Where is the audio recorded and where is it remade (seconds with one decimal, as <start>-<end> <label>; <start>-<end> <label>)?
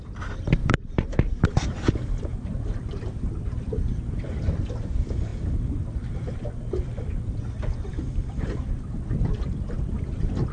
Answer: 0.0-0.6 recorded; 0.6-1.1 remade; 1.1-10.5 recorded